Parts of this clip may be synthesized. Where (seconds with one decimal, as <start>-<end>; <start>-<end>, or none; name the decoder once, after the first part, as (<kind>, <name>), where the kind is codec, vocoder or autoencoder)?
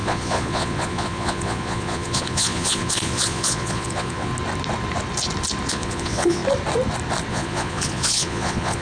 0.0-4.3 (vocoder, Vocos); 5.7-6.4; 7.3-8.8